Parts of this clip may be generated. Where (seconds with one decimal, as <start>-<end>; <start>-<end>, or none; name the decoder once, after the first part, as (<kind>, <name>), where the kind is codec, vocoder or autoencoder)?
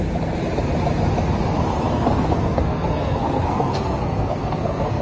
1.9-5.0 (codec, SNAC)